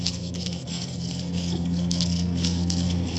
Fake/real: fake